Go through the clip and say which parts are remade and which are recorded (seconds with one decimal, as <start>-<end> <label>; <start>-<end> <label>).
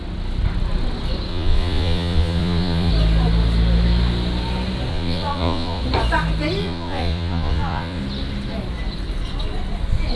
0.0-1.3 recorded; 1.3-2.9 remade; 2.9-4.9 recorded; 4.9-5.8 remade; 5.8-6.6 recorded; 6.6-8.0 remade; 8.0-10.2 recorded